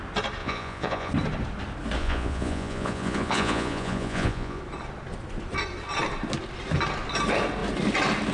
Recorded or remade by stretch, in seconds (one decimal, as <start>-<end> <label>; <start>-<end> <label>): 0.0-0.4 recorded; 0.4-1.1 remade; 1.1-2.0 recorded; 2.0-4.6 remade; 4.6-8.3 recorded